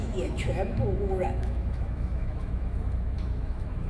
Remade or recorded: remade